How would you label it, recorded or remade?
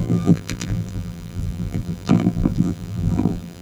remade